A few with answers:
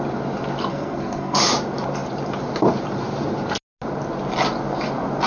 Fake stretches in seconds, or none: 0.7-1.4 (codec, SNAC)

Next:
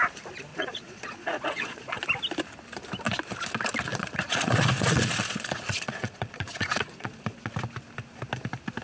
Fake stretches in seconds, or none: 0.5-2.0 (vocoder, Vocos); 3.9-7.5